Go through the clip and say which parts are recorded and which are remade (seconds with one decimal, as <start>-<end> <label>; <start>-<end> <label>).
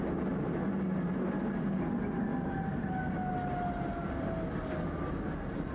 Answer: 0.0-2.3 recorded; 2.3-3.0 remade; 3.0-5.7 recorded